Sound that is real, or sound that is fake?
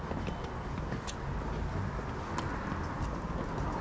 real